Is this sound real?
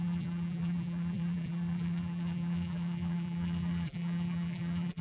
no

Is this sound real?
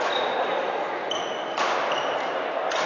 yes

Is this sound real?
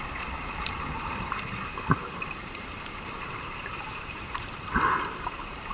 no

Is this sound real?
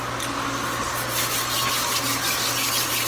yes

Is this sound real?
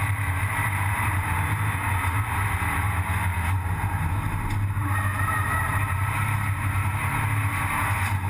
no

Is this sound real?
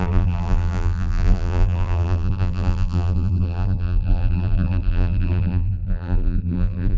no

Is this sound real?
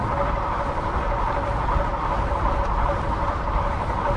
yes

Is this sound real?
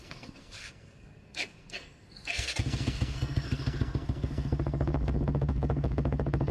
no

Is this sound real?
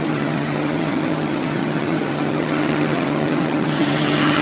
no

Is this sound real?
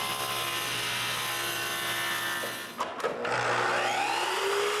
yes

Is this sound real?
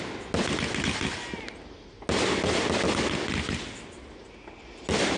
yes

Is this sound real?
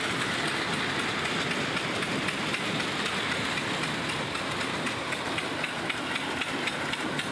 yes